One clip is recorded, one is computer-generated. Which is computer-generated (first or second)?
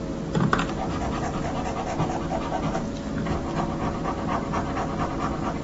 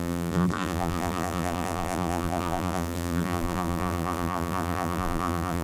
second